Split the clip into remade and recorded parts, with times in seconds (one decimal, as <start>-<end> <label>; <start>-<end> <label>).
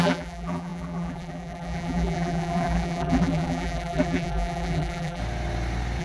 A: 0.0-5.2 remade; 5.2-6.0 recorded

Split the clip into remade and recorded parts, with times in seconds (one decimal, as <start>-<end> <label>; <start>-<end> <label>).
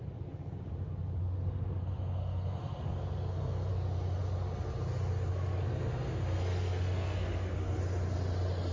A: 0.0-1.2 recorded; 1.2-3.7 remade; 3.7-5.3 recorded; 5.3-7.8 remade; 7.8-8.7 recorded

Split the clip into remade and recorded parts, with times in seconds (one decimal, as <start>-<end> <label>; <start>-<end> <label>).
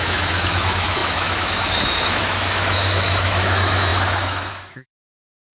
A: 0.0-5.5 remade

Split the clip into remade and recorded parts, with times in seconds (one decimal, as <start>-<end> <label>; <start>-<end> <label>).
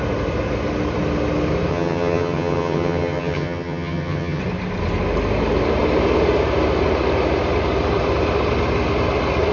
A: 0.0-1.7 recorded; 1.7-4.4 remade; 4.4-9.5 recorded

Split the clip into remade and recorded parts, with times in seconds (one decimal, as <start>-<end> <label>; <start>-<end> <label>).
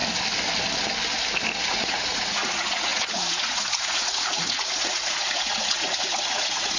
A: 0.0-1.7 recorded; 1.7-6.8 remade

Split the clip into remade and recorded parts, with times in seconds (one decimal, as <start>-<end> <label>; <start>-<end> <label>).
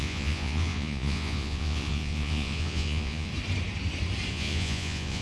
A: 0.0-3.3 remade; 3.3-4.3 recorded; 4.3-5.2 remade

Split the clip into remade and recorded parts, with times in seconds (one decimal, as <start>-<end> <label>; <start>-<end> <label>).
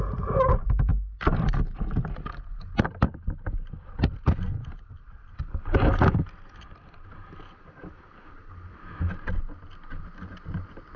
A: 0.0-11.0 recorded